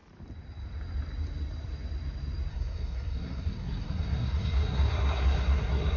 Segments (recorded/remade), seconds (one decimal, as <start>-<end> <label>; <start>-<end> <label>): 0.0-2.5 recorded; 2.5-6.0 remade